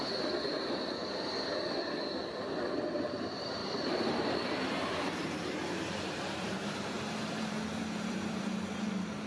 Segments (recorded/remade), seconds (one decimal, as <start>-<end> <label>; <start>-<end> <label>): 0.0-3.6 recorded; 3.6-8.6 remade; 8.6-9.3 recorded